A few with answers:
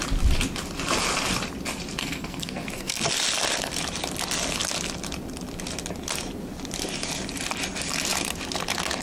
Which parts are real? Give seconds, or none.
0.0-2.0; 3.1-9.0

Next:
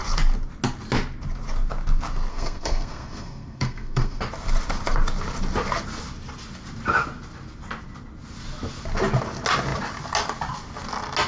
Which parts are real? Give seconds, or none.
0.0-2.3; 4.2-11.3

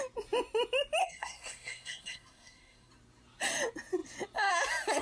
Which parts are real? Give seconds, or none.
0.0-1.0; 2.9-5.0

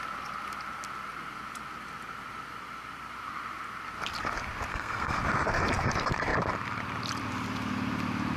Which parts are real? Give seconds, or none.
0.0-4.7; 5.2-8.4

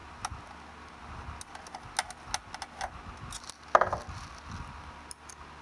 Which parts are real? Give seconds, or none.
0.0-5.6